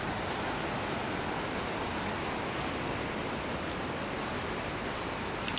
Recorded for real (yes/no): yes